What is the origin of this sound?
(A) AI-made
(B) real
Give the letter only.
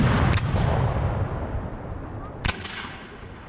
B